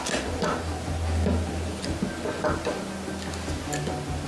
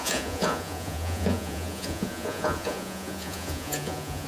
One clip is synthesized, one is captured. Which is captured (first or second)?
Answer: first